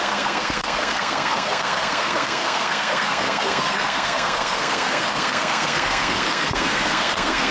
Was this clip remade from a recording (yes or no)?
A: yes